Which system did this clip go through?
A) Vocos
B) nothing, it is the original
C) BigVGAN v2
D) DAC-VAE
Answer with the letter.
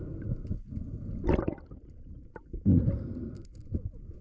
B